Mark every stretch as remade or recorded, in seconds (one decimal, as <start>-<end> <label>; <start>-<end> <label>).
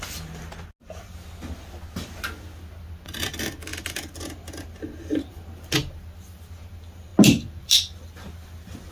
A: 0.0-8.9 recorded